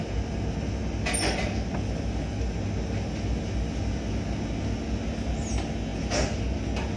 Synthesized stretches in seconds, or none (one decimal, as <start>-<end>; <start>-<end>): none